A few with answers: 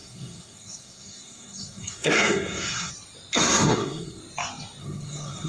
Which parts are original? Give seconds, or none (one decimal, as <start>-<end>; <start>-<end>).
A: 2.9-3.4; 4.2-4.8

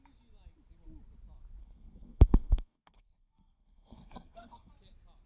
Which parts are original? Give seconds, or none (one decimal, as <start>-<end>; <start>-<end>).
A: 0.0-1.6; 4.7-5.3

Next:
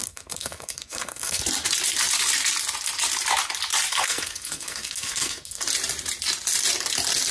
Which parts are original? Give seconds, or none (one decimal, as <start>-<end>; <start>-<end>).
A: 1.4-3.9; 5.6-7.3